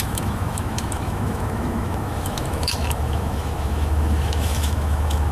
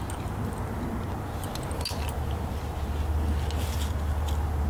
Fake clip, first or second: first